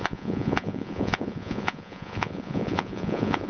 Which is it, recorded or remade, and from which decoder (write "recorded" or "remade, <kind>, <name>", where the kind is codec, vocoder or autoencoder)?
remade, vocoder, Vocos